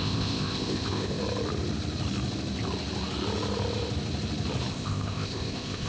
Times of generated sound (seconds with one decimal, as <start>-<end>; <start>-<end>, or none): 0.0-1.2; 4.7-5.9